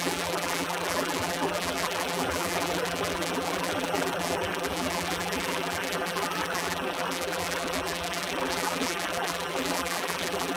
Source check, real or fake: fake